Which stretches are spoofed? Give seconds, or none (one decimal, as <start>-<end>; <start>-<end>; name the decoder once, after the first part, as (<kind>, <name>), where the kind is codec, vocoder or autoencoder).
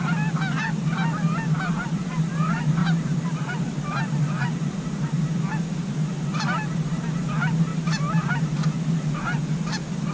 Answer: 2.8-3.6 (vocoder, BigVGAN v2); 7.7-8.4